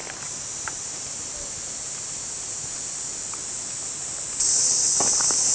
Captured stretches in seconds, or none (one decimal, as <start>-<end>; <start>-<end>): 0.0-5.5